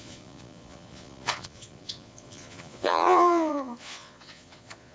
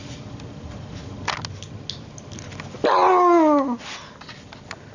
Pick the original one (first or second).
second